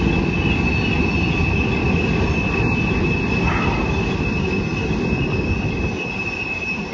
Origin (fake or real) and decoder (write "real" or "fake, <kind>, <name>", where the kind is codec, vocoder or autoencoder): real